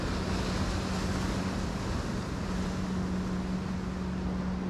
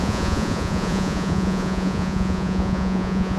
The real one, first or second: first